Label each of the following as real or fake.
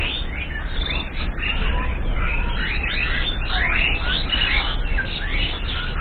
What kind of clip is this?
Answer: real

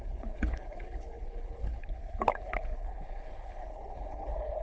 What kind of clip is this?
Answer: fake